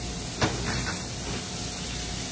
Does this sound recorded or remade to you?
recorded